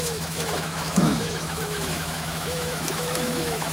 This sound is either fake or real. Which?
fake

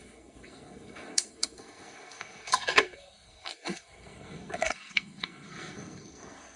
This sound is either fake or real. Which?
fake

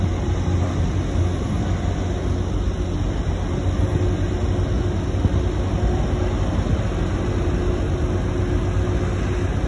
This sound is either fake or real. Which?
real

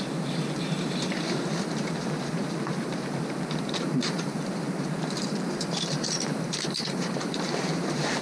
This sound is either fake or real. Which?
fake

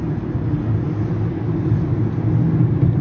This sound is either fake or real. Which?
real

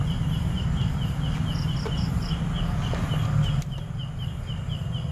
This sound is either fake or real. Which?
real